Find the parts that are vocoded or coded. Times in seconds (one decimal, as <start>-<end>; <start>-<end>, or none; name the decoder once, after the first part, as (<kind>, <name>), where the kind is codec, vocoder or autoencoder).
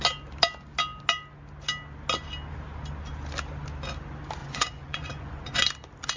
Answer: 4.4-5.6 (vocoder, Vocos)